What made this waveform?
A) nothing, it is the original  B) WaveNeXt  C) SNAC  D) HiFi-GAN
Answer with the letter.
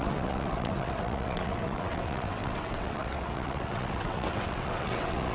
B